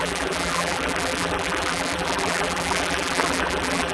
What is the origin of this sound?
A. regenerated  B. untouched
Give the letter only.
A